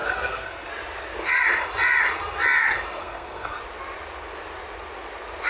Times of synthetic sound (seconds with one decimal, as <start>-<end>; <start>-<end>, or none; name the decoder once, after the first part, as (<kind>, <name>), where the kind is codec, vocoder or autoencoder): 0.0-0.7 (codec, SNAC); 3.0-3.6